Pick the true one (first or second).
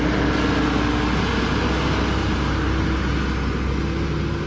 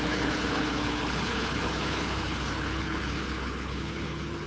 first